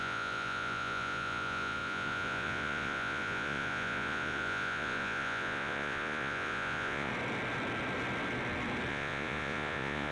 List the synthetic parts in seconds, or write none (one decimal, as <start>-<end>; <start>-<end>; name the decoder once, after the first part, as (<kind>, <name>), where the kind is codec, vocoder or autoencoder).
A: 0.0-7.1 (vocoder, Vocos); 8.9-10.1